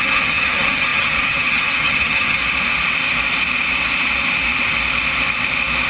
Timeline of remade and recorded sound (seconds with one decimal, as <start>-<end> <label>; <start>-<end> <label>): 0.0-2.4 remade; 2.4-5.9 recorded